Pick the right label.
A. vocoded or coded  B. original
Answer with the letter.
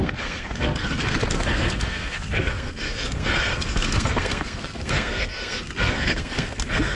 A